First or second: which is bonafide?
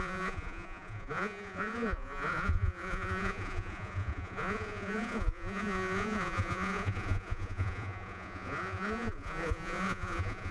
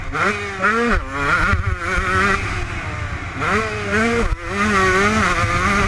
second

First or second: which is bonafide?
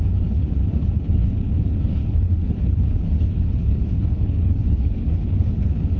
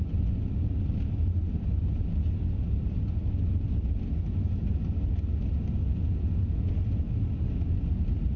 second